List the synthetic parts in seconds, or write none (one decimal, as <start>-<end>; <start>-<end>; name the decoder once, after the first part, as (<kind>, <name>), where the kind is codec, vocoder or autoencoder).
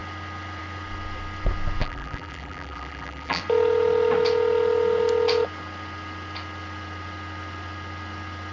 1.8-3.4 (vocoder, BigVGAN v2)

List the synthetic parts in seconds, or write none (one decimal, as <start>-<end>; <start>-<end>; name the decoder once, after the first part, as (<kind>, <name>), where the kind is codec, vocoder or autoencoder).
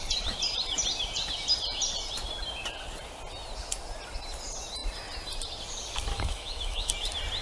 6.1-6.9 (autoencoder, DAC-VAE)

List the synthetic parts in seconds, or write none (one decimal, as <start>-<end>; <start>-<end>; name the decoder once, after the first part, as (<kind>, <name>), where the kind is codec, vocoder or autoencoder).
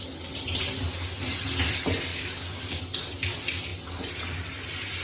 2.1-2.8 (codec, DAC)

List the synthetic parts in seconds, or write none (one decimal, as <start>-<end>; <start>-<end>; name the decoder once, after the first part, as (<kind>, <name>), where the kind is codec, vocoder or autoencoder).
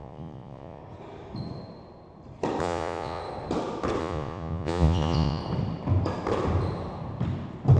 0.0-0.8 (vocoder, Vocos); 2.6-3.2; 4.0-5.4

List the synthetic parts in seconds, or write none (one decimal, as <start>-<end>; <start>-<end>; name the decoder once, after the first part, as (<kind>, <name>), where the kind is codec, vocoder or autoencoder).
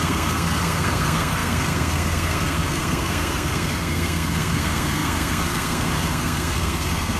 0.0-7.2 (codec, SNAC)